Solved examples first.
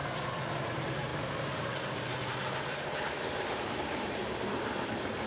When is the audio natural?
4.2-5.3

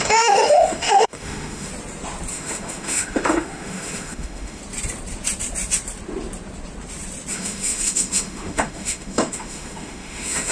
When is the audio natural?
1.7-2.3; 4.6-7.3

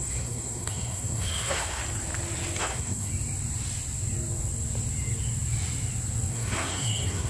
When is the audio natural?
1.8-2.6; 3.1-6.3

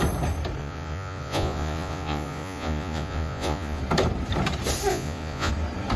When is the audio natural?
0.0-0.6; 3.8-4.9; 5.5-6.0